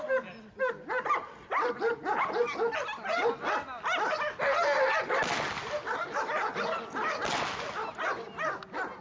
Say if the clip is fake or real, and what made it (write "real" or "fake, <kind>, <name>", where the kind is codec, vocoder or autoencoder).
real